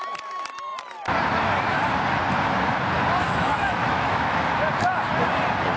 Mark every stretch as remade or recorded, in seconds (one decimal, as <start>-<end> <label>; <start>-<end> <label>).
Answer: 0.0-3.2 recorded; 3.2-4.4 remade; 4.4-5.8 recorded